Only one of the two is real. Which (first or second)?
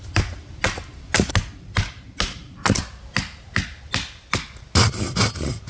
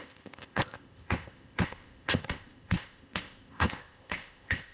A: first